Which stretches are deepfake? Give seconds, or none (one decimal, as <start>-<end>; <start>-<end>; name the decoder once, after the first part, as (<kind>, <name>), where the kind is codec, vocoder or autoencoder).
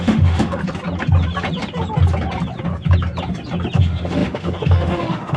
0.0-0.6 (autoencoder, DAC-VAE); 3.8-5.4